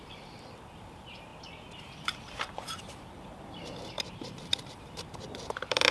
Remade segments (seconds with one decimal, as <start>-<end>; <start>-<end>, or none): 0.0-1.3; 1.8-5.9